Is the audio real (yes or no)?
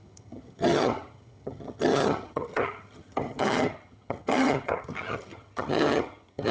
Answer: no